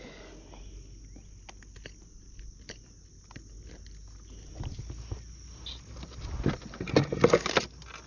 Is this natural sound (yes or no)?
yes